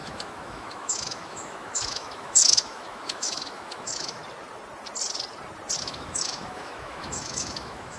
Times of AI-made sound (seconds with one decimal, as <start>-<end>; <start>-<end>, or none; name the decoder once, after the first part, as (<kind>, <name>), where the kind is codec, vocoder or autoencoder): 0.0-4.2 (autoencoder, DAC-VAE); 5.8-8.0